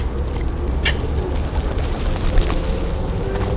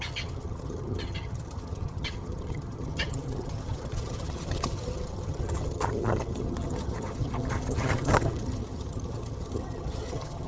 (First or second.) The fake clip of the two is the second